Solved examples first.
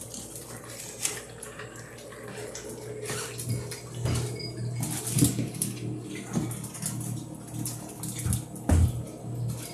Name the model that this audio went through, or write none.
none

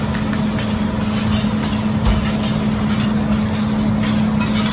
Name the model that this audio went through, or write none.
none